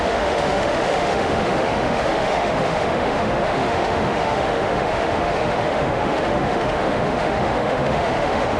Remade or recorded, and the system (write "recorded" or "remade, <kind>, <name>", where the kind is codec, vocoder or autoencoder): remade, autoencoder, DAC-VAE